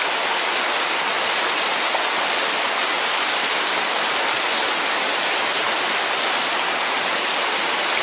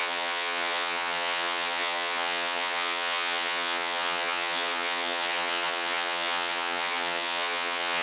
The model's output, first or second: second